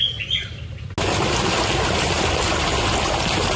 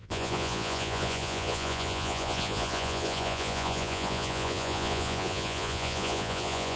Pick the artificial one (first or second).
second